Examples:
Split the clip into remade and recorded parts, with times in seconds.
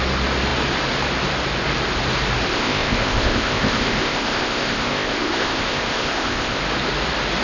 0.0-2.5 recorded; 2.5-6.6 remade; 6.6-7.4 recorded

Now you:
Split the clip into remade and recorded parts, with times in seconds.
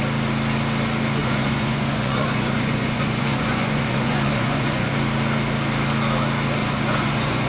0.0-1.2 recorded; 1.2-4.9 remade; 4.9-6.6 recorded; 6.6-7.5 remade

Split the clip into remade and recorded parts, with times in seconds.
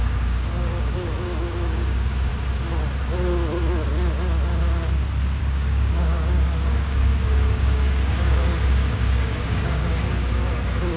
0.0-2.3 remade; 2.3-5.4 recorded; 5.4-11.0 remade